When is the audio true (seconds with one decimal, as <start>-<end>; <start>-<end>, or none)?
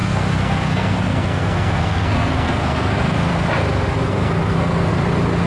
3.3-4.1; 4.9-5.5